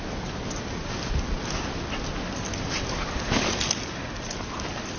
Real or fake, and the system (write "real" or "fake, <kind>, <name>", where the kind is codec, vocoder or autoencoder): real